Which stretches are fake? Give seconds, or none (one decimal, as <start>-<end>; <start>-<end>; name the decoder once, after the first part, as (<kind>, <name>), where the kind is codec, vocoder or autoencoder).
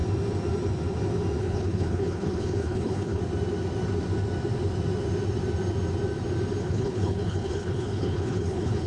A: 1.4-3.2 (codec, HILCodec); 6.6-8.9